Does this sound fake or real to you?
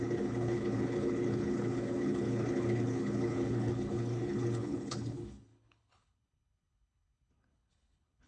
fake